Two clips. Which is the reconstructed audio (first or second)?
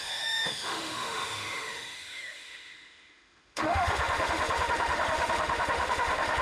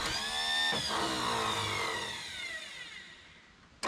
first